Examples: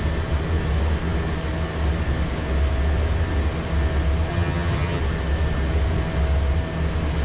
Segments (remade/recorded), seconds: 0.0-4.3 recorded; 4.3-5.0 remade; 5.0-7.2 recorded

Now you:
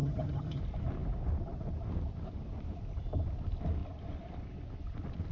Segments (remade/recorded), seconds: 0.0-0.6 remade; 0.6-5.3 recorded

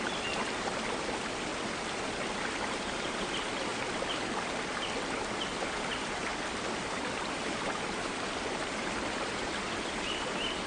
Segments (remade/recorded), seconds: 0.0-1.5 remade; 1.5-2.7 recorded; 2.7-3.7 remade; 3.7-5.7 recorded; 5.7-6.3 remade; 6.3-6.8 recorded; 6.8-10.7 remade

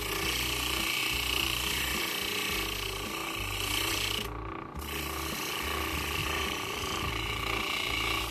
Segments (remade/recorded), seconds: 0.0-1.0 recorded; 1.0-2.0 remade; 2.0-3.2 recorded; 3.2-3.9 remade; 3.9-6.2 recorded; 6.2-7.1 remade; 7.1-8.3 recorded

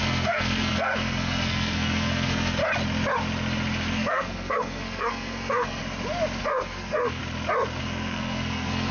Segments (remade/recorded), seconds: 0.0-2.6 remade; 2.6-3.9 recorded; 3.9-5.8 remade; 5.8-6.4 recorded; 6.4-7.2 remade; 7.2-7.8 recorded; 7.8-8.9 remade